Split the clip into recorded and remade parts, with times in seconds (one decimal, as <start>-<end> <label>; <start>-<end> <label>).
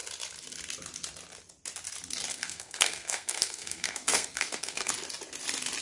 0.0-2.3 recorded; 2.3-4.9 remade; 4.9-5.8 recorded